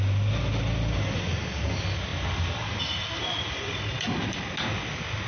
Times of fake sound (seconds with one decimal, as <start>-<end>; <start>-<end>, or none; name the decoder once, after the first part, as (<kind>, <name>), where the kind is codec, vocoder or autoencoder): none